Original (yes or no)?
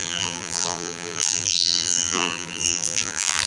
no